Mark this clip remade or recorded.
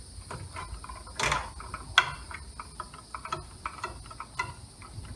recorded